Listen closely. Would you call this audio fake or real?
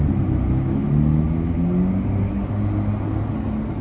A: real